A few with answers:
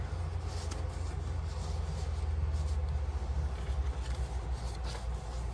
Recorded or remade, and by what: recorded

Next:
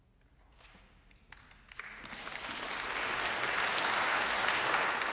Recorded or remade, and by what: recorded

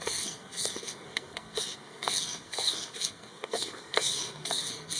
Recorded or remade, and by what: remade, codec, SNAC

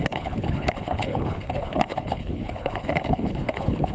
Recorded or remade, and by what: remade, codec, HILCodec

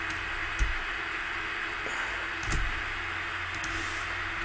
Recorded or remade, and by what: recorded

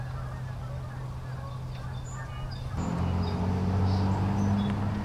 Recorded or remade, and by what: recorded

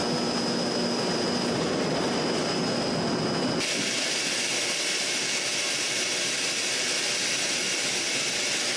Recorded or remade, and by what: recorded